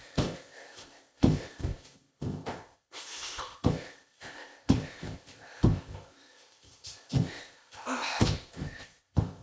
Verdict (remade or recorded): remade